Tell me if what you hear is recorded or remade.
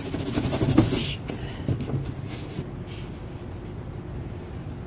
recorded